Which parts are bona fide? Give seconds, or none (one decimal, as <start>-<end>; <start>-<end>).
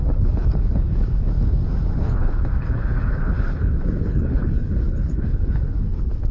1.3-1.9